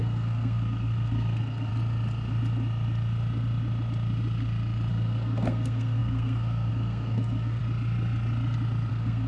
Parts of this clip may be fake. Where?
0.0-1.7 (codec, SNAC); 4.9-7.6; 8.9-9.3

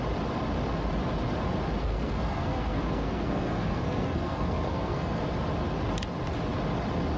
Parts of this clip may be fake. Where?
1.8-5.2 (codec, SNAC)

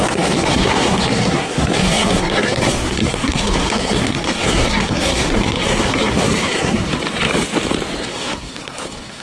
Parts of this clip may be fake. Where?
0.0-6.9 (codec, SNAC); 8.0-9.2

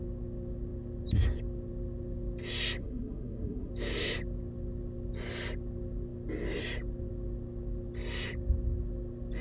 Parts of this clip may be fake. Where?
2.8-3.7 (codec, SNAC)

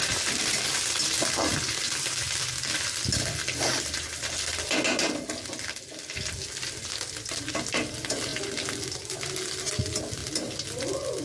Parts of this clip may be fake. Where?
none

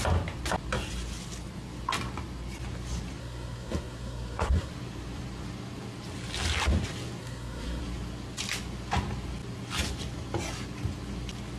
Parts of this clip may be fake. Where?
3.2-4.7 (codec, SNAC); 7.2-7.8